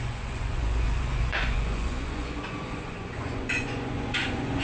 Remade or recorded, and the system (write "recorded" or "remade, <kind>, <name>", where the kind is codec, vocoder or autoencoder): remade, vocoder, Vocos